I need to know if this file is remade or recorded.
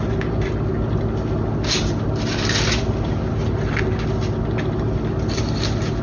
recorded